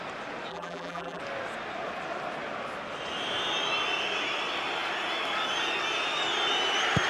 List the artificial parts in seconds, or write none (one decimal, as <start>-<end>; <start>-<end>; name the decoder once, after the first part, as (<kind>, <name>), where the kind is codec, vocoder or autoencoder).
0.5-1.2 (vocoder, BigVGAN v2)